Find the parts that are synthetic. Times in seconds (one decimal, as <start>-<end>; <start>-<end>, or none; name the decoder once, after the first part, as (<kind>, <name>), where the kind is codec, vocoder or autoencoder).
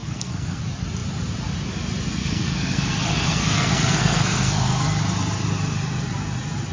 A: 0.0-0.6 (codec, SNAC); 2.2-5.0